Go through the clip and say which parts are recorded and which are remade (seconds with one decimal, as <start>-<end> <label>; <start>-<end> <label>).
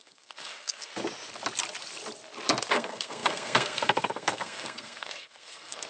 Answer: 0.0-0.9 remade; 0.9-2.7 recorded; 2.7-5.9 remade